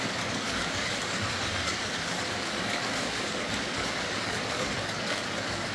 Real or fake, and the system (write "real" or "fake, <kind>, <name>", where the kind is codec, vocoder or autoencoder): fake, codec, DAC